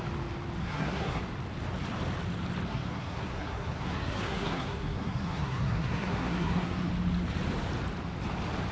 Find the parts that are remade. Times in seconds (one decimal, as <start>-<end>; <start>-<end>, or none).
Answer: 0.6-1.2; 2.7-6.9